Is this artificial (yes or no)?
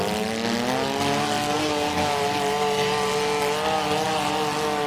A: no